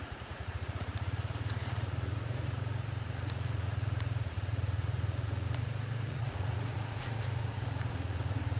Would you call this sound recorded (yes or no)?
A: no